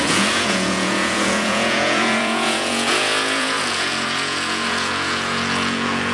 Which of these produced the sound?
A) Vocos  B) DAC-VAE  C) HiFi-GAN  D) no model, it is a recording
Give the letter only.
A